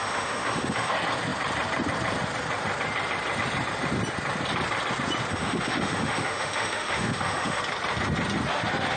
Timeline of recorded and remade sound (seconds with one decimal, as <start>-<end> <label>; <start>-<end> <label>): 0.0-0.9 remade; 0.9-5.3 recorded; 5.3-7.6 remade; 7.6-9.0 recorded